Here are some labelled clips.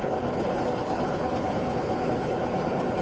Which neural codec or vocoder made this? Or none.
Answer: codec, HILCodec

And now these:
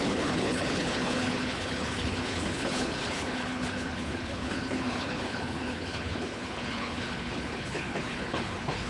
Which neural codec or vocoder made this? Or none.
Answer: codec, HILCodec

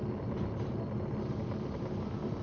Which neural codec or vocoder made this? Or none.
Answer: none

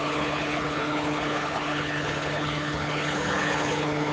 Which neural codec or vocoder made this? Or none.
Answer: codec, HILCodec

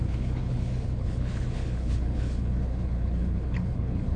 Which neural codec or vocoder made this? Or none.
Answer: codec, HILCodec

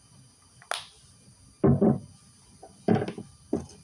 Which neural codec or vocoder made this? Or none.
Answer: none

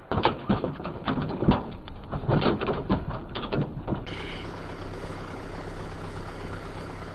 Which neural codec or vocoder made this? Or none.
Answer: codec, HILCodec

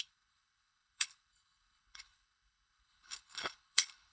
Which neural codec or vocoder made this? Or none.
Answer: codec, HILCodec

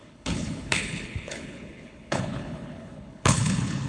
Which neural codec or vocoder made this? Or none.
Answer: codec, HILCodec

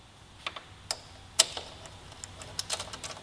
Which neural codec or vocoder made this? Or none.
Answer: none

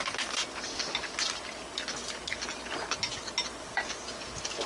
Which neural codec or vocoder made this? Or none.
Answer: none